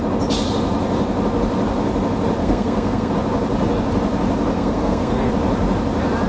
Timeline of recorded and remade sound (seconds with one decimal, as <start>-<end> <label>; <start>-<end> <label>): 0.0-2.4 recorded; 2.4-3.1 remade; 3.1-4.5 recorded; 4.5-5.3 remade; 5.3-6.3 recorded